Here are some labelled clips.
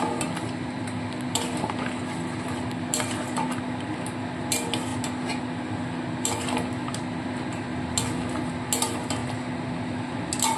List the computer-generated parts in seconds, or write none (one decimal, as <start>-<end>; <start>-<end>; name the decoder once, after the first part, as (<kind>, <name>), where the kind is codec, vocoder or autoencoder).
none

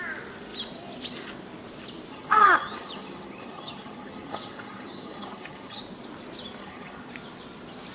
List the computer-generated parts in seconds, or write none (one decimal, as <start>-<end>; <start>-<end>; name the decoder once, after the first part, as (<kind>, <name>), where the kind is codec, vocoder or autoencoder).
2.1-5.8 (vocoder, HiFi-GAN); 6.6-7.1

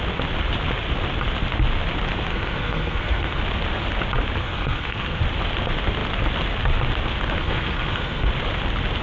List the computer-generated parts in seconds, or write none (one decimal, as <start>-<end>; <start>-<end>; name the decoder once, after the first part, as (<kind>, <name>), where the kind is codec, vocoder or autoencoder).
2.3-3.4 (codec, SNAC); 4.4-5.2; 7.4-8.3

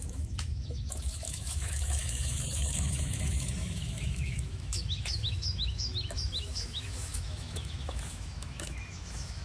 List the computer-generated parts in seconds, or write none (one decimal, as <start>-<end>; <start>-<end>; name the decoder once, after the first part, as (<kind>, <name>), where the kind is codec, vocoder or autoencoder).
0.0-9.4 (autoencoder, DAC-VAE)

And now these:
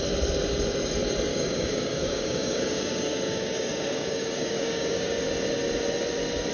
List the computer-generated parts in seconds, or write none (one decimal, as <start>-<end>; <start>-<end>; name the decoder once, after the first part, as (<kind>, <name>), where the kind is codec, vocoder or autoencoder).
1.3-5.2 (codec, DAC)

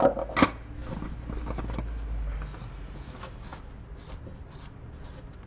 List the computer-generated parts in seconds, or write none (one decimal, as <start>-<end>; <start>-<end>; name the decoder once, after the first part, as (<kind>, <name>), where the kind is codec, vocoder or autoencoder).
none

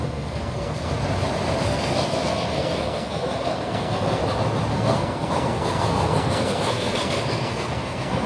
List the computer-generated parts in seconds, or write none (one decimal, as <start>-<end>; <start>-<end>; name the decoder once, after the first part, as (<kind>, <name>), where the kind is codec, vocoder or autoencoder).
0.0-0.9 (codec, SNAC); 1.6-4.2; 4.7-8.3

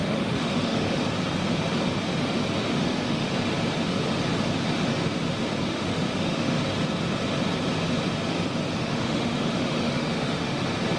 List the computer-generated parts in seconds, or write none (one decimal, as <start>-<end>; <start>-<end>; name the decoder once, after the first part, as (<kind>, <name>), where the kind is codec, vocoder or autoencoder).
0.0-1.0 (autoencoder, DAC-VAE); 2.7-3.3; 5.7-6.6; 8.8-10.6